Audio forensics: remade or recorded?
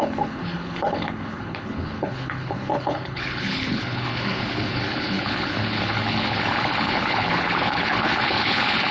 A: remade